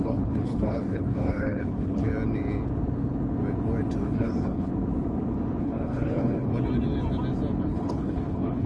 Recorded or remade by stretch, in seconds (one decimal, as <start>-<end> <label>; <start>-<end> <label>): 0.0-2.1 remade; 2.1-4.0 recorded; 4.0-4.7 remade; 4.7-5.6 recorded; 5.6-6.5 remade; 6.5-7.6 recorded; 7.6-8.7 remade